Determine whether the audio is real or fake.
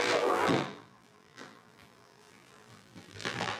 fake